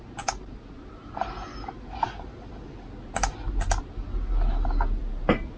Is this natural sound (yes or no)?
yes